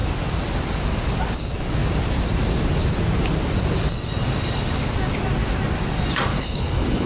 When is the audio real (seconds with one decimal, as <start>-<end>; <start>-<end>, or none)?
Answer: 0.0-6.3